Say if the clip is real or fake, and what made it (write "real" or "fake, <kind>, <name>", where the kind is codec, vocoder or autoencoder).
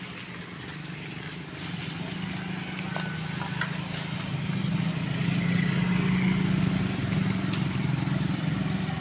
real